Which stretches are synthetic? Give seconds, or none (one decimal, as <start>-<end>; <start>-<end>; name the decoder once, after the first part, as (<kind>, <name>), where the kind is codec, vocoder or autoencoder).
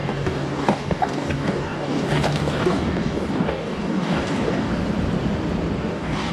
0.0-4.7 (codec, DAC); 5.8-6.3